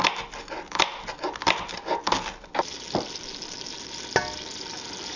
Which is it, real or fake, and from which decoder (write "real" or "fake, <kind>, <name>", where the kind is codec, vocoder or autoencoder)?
real